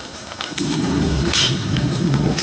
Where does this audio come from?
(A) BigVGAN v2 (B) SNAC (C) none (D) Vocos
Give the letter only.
B